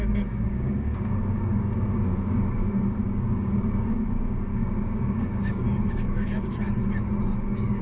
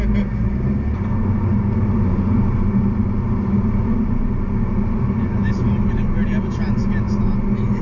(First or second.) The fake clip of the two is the first